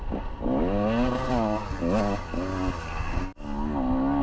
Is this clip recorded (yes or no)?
yes